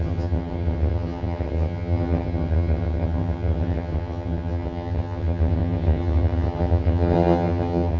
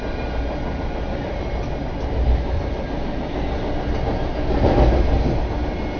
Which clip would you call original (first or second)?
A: second